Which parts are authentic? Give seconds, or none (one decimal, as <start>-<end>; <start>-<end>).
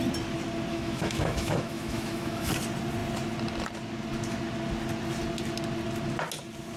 0.0-0.7; 2.5-6.8